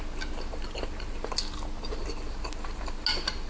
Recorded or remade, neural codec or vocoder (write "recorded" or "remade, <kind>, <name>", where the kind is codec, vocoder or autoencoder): recorded